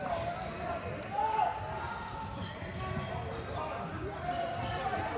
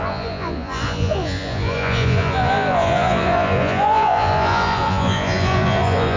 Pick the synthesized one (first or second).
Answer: second